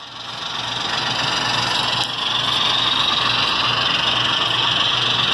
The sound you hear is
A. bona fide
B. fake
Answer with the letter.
A